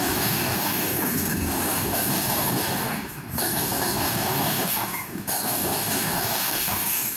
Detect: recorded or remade remade